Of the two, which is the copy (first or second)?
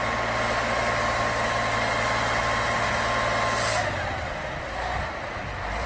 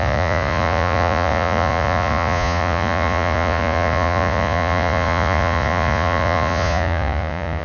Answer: second